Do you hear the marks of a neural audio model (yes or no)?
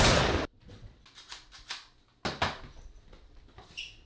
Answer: no